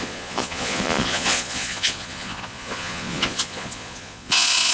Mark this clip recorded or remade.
remade